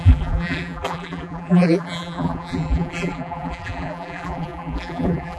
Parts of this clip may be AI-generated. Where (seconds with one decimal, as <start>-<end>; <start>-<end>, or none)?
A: 0.0-5.4